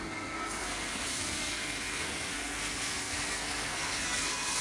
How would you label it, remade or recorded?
remade